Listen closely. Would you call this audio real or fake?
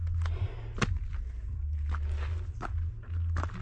real